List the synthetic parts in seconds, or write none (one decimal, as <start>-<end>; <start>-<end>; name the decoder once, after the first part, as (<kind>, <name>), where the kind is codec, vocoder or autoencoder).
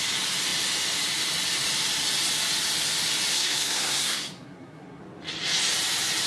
3.3-5.0 (codec, SNAC)